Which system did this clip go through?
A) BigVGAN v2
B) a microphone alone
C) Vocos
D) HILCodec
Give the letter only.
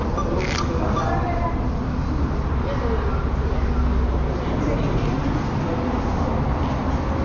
B